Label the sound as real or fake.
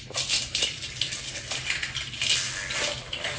real